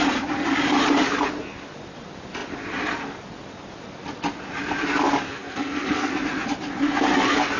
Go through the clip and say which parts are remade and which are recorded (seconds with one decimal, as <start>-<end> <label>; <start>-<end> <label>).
0.0-5.3 recorded; 5.3-6.1 remade; 6.1-7.6 recorded